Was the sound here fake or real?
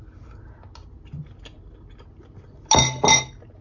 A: real